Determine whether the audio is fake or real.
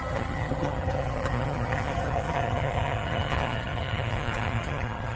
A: fake